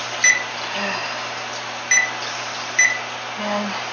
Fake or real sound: real